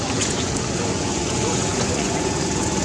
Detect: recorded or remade remade